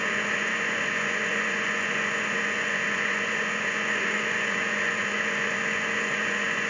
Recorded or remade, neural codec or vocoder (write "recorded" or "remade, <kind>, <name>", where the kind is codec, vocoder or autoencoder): remade, vocoder, Vocos